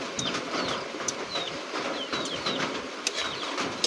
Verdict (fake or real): real